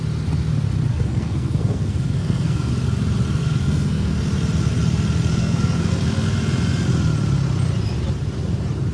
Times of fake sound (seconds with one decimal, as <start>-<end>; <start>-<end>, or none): 0.9-2.7; 3.4-4.2; 5.3-5.9